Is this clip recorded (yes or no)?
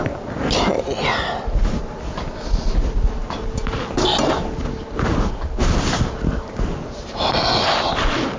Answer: yes